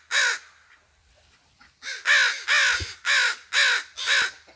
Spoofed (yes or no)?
no